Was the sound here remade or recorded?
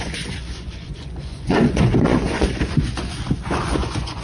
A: remade